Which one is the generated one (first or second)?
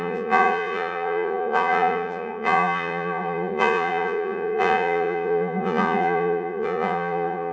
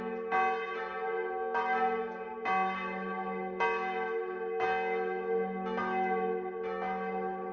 first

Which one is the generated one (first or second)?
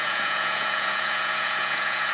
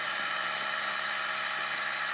first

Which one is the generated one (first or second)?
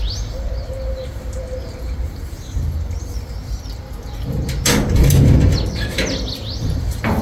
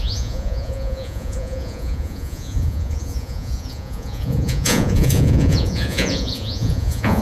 second